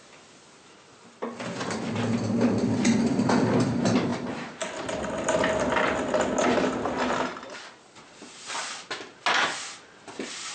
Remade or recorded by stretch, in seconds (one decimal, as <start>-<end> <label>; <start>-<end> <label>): 0.0-10.5 recorded

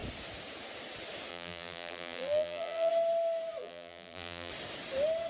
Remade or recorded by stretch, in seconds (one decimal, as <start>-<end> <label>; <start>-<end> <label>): 0.0-1.3 recorded; 1.3-2.9 remade; 2.9-3.6 recorded; 3.6-4.5 remade; 4.5-5.3 recorded

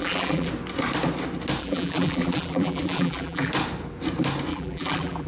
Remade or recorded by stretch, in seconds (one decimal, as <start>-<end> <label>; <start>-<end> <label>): 0.0-0.5 remade; 0.5-1.6 recorded; 1.6-3.5 remade; 3.5-4.5 recorded; 4.5-5.3 remade

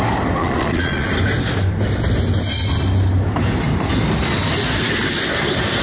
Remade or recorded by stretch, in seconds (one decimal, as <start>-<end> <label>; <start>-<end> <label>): 0.0-0.4 recorded; 0.4-1.1 remade; 1.1-5.8 recorded

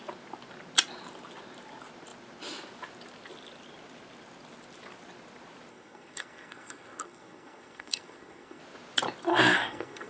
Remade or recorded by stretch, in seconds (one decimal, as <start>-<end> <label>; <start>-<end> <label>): 0.0-5.7 recorded; 5.7-8.6 remade; 8.6-9.3 recorded; 9.3-10.1 remade

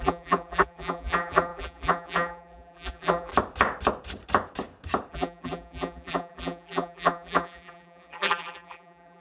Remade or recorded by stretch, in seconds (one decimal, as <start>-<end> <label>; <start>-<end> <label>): 0.0-3.3 remade; 3.3-5.1 recorded; 5.1-9.2 remade

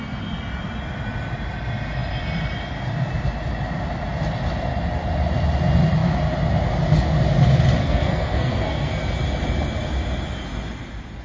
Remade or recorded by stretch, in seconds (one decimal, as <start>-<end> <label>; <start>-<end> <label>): 0.0-7.8 recorded; 7.8-9.0 remade; 9.0-11.2 recorded

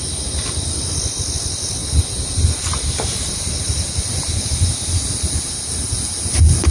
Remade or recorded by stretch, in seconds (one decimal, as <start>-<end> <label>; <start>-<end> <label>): 0.0-6.7 recorded